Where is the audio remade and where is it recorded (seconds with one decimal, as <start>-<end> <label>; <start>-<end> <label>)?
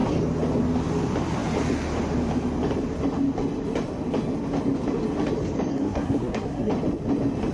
0.0-5.7 recorded; 5.7-6.7 remade; 6.7-7.5 recorded